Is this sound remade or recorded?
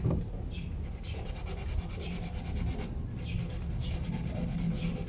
recorded